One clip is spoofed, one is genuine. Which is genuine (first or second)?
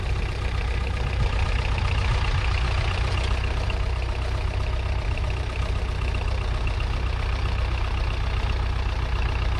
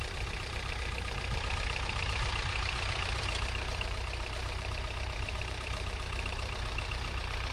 first